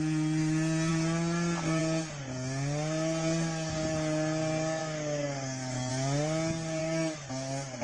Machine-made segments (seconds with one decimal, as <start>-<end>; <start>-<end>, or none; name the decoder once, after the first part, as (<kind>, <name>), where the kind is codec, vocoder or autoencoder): 4.8-5.9 (codec, DAC); 6.8-7.3